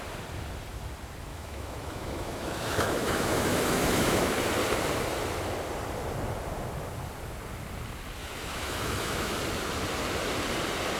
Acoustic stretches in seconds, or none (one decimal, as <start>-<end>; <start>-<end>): 0.0-1.3; 4.3-8.2; 9.4-11.0